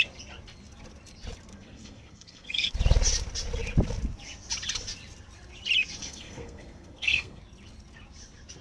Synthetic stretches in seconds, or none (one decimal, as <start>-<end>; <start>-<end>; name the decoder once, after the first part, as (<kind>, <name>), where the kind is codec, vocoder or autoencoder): 1.5-2.7 (codec, SNAC); 6.0-7.4